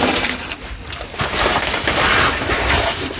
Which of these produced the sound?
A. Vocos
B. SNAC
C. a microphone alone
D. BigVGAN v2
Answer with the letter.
D